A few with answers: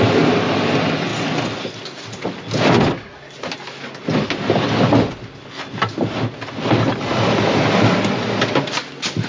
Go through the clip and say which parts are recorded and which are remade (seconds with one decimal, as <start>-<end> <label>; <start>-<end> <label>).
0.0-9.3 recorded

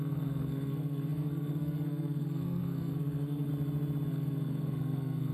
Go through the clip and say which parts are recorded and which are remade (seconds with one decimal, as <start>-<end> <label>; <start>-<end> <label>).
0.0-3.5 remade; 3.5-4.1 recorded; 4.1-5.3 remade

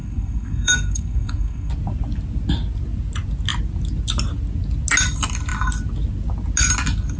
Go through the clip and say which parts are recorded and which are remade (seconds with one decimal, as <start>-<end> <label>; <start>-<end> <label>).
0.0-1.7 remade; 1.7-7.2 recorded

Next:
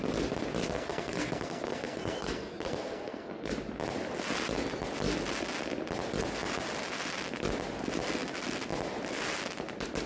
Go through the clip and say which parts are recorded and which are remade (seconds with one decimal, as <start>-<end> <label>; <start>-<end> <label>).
0.0-0.6 recorded; 0.6-3.5 remade; 3.5-10.1 recorded

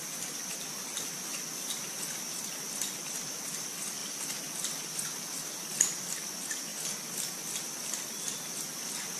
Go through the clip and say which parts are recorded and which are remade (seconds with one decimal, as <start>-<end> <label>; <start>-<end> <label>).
0.0-9.2 recorded